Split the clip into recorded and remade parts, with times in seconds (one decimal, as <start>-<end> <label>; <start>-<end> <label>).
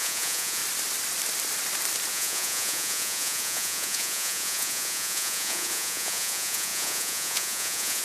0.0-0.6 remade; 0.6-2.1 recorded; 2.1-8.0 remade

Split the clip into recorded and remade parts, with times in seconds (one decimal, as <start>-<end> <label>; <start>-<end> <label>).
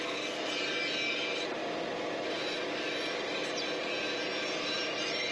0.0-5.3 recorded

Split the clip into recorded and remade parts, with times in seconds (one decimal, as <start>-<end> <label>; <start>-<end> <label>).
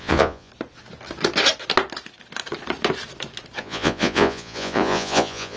0.0-0.5 remade; 0.5-3.6 recorded; 3.6-5.6 remade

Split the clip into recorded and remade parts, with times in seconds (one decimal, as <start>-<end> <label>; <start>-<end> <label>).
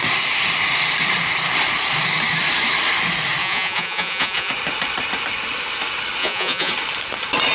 0.0-3.4 recorded; 3.4-4.5 remade; 4.5-6.2 recorded; 6.2-6.7 remade; 6.7-7.5 recorded